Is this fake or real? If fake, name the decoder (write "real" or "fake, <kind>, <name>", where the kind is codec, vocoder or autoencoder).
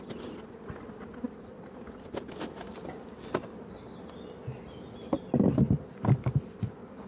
real